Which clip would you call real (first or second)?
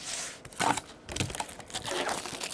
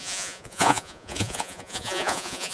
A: first